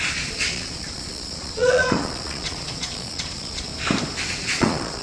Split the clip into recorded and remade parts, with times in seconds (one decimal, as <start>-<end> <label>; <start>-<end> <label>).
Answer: 0.0-3.7 remade; 3.7-4.3 recorded; 4.3-5.0 remade